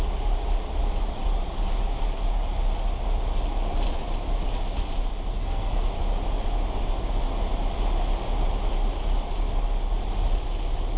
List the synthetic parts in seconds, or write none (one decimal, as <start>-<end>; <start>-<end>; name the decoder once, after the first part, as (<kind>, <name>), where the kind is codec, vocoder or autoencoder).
5.3-5.9 (codec, SNAC)